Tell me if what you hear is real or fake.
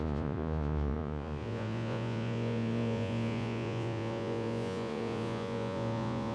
fake